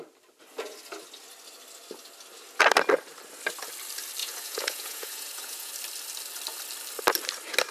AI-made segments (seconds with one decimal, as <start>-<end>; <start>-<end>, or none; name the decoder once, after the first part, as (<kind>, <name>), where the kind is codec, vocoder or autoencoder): 4.2-5.7 (vocoder, Vocos)

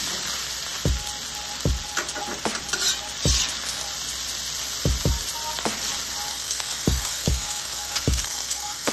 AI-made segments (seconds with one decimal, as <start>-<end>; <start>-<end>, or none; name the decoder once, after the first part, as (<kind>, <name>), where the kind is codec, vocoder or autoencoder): 6.3-8.9 (codec, SNAC)

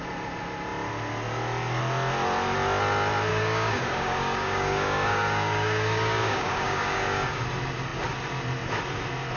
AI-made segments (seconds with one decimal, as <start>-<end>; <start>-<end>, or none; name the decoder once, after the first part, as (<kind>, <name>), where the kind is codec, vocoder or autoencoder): 3.3-7.4 (codec, DAC)

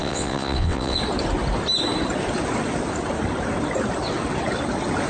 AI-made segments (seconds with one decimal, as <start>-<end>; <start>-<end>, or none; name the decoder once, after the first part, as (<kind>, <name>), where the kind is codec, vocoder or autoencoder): 0.0-1.0 (vocoder, WaveNeXt)

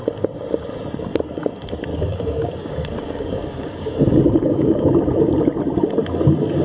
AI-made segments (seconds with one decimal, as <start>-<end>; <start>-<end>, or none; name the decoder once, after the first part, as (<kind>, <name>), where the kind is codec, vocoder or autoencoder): 1.9-4.9 (codec, DAC)

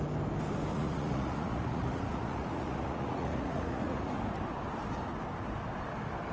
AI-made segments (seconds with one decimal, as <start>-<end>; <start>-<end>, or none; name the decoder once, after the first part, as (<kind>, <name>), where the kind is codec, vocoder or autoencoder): 0.7-4.0 (vocoder, Vocos)